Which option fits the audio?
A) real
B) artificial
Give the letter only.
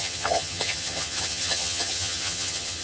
B